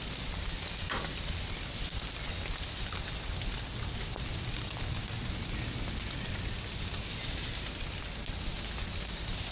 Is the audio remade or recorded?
recorded